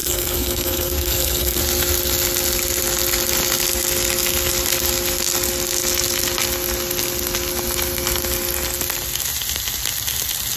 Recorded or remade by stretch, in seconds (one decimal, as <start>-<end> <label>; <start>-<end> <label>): 0.0-1.6 remade; 1.6-10.6 recorded